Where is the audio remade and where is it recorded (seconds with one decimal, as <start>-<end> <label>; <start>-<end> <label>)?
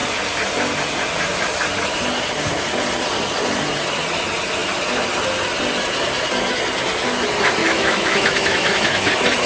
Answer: 0.0-7.6 recorded; 7.6-9.1 remade; 9.1-9.5 recorded